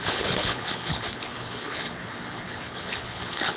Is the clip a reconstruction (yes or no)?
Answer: yes